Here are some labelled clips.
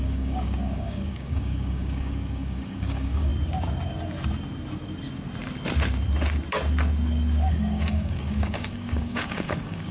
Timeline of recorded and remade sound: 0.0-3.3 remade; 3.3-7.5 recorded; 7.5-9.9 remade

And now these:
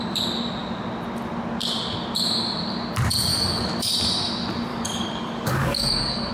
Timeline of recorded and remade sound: 0.0-3.3 recorded; 3.3-3.9 remade; 3.9-4.7 recorded; 4.7-6.3 remade

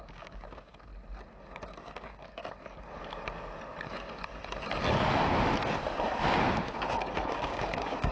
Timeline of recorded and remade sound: 0.0-0.9 remade; 0.9-1.8 recorded; 1.8-2.4 remade; 2.4-6.5 recorded; 6.5-8.1 remade

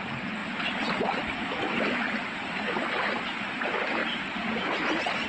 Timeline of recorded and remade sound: 0.0-5.3 recorded

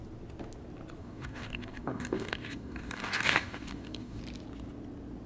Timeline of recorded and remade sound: 0.0-1.0 recorded; 1.0-4.2 remade; 4.2-5.3 recorded

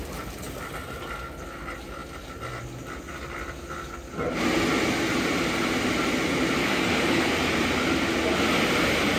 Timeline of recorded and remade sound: 0.0-6.6 recorded; 6.6-7.2 remade; 7.2-9.2 recorded